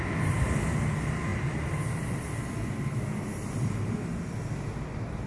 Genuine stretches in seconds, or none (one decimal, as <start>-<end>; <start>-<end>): 0.0-5.3